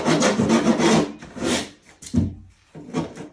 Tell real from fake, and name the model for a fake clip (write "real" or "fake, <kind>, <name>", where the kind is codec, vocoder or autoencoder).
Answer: real